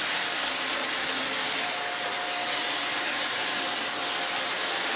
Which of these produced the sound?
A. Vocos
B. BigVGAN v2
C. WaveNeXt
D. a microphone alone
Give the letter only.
D